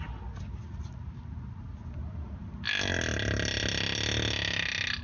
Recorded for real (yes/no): yes